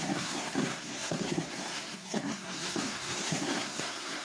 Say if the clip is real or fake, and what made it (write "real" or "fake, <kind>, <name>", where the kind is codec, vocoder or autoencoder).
fake, codec, SNAC